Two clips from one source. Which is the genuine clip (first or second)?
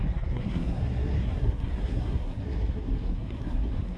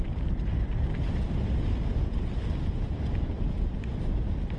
second